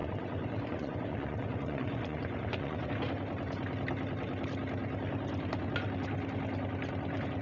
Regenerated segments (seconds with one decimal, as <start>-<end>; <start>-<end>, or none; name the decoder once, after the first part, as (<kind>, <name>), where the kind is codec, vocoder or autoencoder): 0.0-2.9 (vocoder, Vocos)